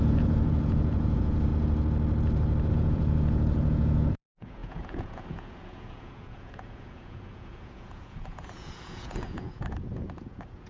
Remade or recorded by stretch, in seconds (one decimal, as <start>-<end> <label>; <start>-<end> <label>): 0.0-1.5 remade; 1.5-2.7 recorded; 2.7-10.7 remade